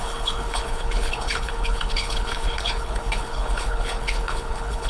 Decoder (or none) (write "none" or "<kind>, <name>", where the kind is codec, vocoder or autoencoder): codec, HILCodec